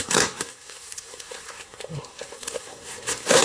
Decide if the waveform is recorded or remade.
remade